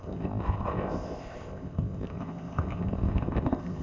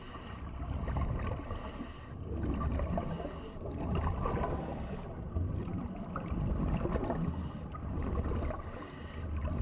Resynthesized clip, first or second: first